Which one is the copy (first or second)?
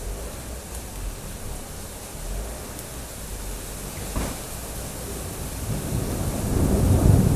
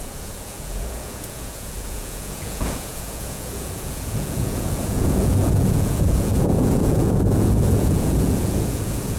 second